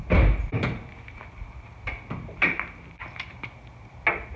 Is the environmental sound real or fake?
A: real